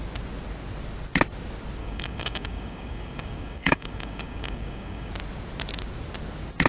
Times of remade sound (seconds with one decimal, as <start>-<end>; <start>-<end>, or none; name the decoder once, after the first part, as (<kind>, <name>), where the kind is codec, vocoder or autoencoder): 1.8-5.1 (codec, DAC)